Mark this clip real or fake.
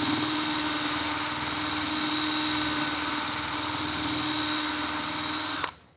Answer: fake